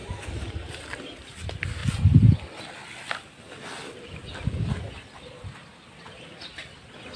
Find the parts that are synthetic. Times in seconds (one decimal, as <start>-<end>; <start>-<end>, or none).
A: none